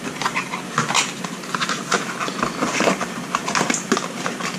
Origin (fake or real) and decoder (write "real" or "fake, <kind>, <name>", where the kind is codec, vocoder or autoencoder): real